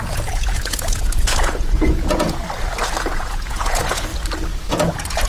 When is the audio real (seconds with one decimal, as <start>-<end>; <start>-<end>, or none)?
2.4-3.0; 4.1-4.7